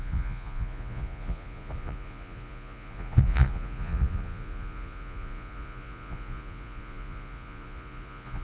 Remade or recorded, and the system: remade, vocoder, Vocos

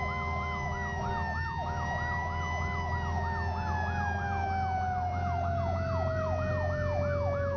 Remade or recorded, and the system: recorded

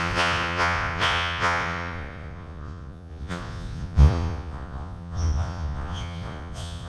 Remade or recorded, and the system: remade, vocoder, Vocos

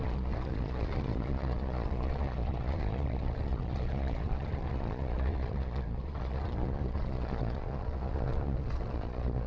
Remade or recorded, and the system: remade, vocoder, Vocos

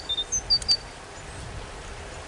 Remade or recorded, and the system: recorded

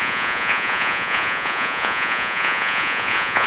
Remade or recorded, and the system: remade, vocoder, Vocos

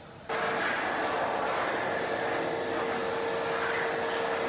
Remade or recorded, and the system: recorded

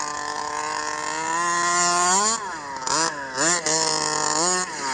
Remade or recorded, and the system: recorded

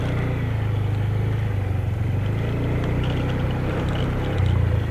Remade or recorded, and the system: recorded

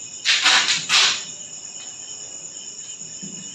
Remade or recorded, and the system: recorded